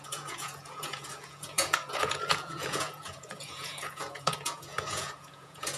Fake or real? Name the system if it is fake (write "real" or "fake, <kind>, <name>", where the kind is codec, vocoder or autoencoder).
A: fake, vocoder, Vocos